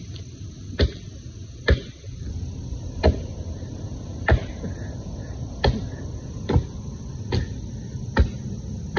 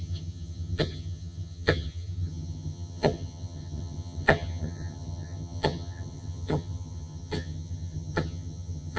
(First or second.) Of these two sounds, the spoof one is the second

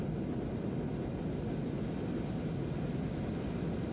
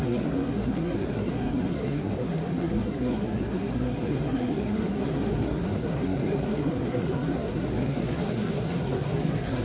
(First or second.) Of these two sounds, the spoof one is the second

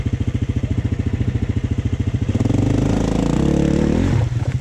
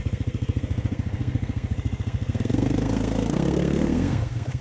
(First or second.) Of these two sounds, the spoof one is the second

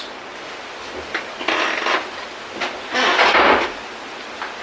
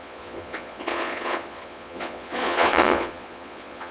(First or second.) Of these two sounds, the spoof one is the second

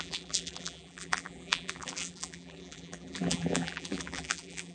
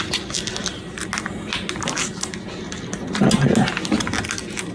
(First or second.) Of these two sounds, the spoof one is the first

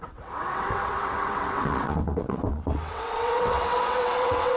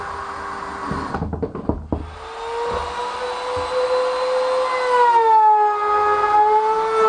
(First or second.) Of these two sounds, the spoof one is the first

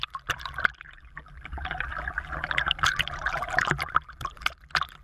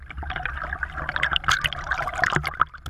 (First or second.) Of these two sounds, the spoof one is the first